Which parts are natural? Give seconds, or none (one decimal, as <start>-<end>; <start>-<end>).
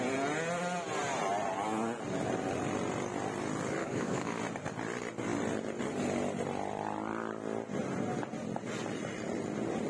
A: 0.0-3.8; 4.4-9.9